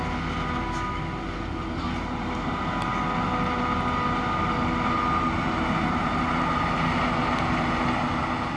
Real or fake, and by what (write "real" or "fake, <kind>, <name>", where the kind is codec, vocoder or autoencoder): real